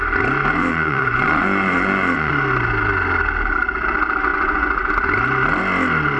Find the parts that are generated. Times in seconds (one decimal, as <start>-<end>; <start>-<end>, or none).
0.6-2.3; 4.3-4.9